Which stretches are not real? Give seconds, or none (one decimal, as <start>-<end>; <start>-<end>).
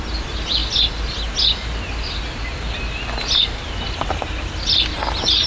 none